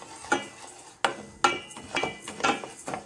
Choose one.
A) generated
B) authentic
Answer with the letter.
B